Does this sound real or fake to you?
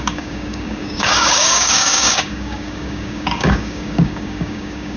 fake